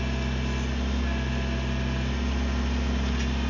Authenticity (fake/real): real